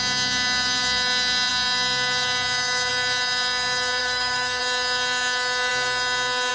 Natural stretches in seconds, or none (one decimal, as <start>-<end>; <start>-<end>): 0.0-4.0; 4.6-6.5